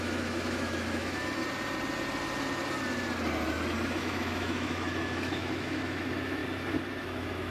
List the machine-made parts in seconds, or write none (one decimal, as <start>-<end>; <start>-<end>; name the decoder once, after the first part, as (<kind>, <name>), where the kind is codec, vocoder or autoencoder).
0.0-1.4 (autoencoder, DAC-VAE); 4.0-6.4; 7.0-7.5